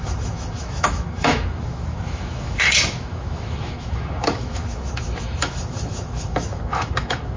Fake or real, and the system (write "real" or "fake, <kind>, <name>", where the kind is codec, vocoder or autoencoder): fake, autoencoder, DAC-VAE